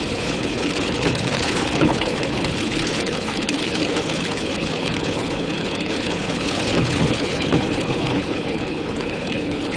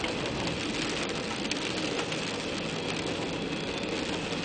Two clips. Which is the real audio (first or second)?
second